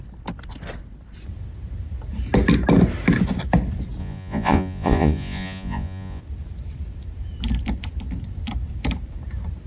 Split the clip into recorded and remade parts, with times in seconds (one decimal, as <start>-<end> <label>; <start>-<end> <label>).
0.0-4.0 recorded; 4.0-6.2 remade; 6.2-9.7 recorded